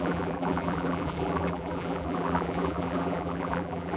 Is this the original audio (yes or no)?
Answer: no